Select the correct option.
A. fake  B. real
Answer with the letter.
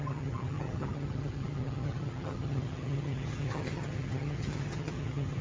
A